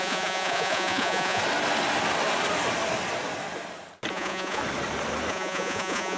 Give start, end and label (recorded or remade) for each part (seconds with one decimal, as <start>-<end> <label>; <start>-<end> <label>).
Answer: 0.0-1.4 remade; 1.4-4.1 recorded; 4.1-4.6 remade; 4.6-5.3 recorded; 5.3-6.2 remade